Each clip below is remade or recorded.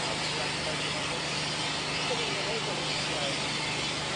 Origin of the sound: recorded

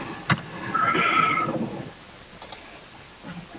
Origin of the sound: recorded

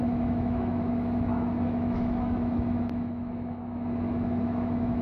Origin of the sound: remade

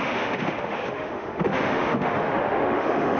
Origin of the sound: remade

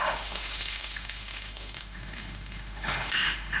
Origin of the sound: remade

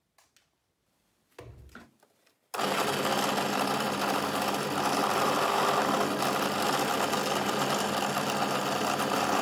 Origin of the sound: recorded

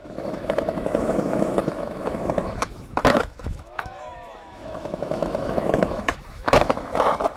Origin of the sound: remade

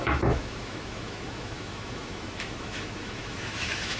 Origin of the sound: remade